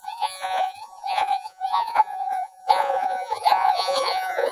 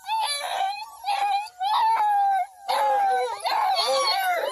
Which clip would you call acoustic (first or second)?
second